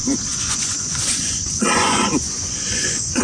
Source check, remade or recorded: remade